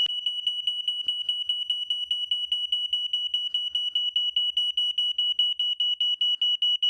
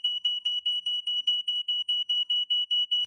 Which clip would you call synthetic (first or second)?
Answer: second